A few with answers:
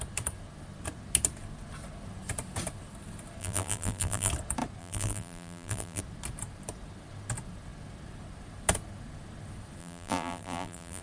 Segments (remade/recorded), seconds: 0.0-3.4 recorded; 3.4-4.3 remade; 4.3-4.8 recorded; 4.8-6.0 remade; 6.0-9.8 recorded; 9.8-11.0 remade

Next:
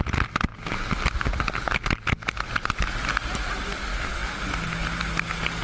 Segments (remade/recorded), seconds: 0.0-5.6 recorded

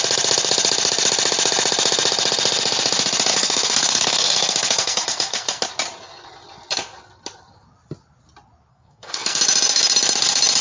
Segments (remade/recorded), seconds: 0.0-3.3 recorded; 3.3-5.6 remade; 5.6-8.7 recorded; 8.7-9.4 remade; 9.4-10.6 recorded

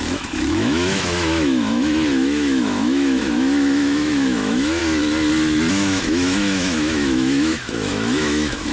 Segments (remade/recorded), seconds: 0.0-4.8 remade; 4.8-5.7 recorded; 5.7-8.7 remade

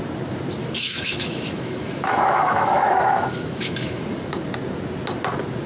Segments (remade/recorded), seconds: 0.0-0.6 recorded; 0.6-4.0 remade; 4.0-5.7 recorded

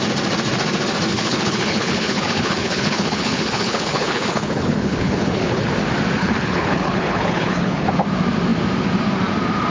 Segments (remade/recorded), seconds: 0.0-1.1 recorded; 1.1-5.7 remade; 5.7-6.2 recorded; 6.2-7.9 remade; 7.9-9.7 recorded

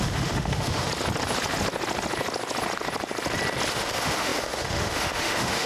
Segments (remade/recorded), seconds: 0.0-0.9 remade; 0.9-3.7 recorded; 3.7-5.7 remade

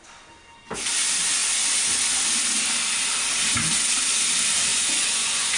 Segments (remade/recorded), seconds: 0.0-4.7 recorded; 4.7-5.6 remade